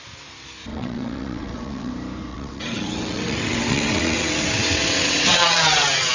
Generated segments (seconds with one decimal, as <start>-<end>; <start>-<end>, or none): 0.7-1.9; 2.3-6.1